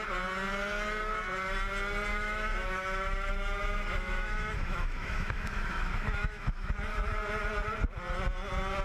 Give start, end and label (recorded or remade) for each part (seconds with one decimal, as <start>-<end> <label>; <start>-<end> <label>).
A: 0.0-2.1 recorded; 2.1-6.7 remade; 6.7-8.8 recorded